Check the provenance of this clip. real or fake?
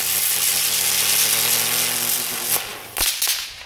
real